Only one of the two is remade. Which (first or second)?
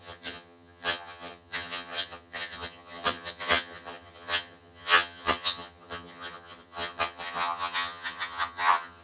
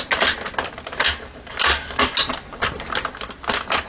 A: first